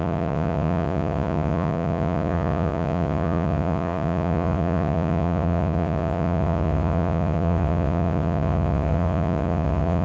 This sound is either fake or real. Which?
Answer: fake